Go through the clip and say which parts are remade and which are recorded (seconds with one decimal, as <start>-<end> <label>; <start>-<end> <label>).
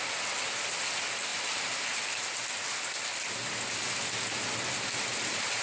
0.0-5.6 recorded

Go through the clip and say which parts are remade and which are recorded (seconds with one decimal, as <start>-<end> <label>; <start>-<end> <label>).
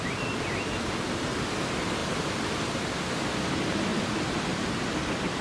0.0-5.4 recorded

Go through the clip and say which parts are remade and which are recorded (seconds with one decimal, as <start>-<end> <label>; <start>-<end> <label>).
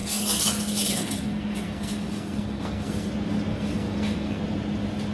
0.0-3.1 remade; 3.1-3.5 recorded; 3.5-4.4 remade; 4.4-5.1 recorded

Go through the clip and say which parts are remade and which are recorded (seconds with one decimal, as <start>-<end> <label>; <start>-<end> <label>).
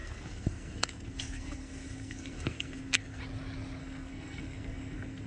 0.0-3.2 remade; 3.2-3.8 recorded; 3.8-5.3 remade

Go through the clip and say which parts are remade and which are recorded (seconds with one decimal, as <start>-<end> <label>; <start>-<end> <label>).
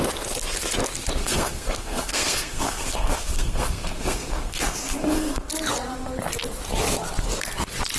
0.0-1.2 recorded; 1.2-5.5 remade; 5.5-8.0 recorded